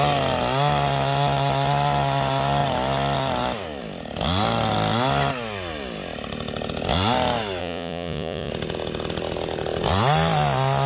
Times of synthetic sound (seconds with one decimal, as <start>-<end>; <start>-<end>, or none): 7.6-8.5